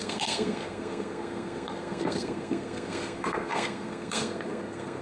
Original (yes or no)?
no